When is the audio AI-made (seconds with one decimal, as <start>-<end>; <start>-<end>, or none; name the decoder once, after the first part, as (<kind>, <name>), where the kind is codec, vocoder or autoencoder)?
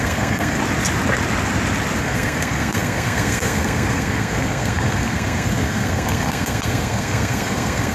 0.0-0.6 (codec, SNAC); 2.0-7.9